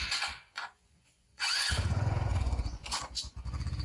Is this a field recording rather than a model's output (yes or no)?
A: no